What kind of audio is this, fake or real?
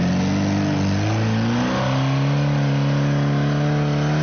real